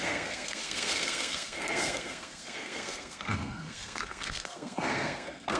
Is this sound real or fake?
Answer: fake